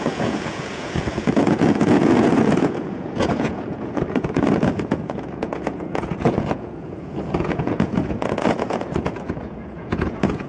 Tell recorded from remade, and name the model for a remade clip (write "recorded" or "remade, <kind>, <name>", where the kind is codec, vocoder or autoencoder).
remade, vocoder, Vocos